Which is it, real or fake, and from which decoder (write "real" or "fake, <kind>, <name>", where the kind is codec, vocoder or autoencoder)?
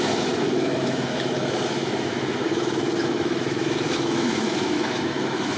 fake, autoencoder, DAC-VAE